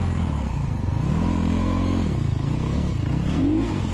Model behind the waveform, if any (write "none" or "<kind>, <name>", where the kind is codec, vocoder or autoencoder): codec, SNAC